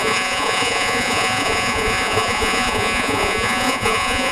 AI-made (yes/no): yes